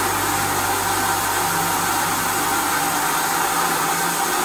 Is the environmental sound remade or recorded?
recorded